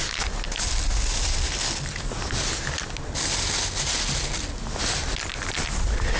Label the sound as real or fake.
real